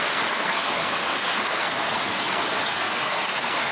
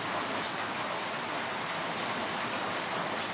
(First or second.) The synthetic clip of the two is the first